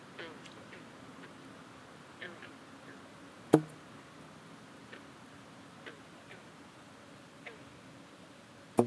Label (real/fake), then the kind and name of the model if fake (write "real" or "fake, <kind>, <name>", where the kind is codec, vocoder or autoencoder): real